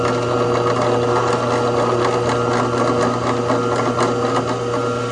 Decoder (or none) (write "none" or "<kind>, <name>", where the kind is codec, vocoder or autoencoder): none